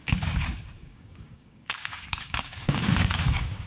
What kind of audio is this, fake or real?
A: fake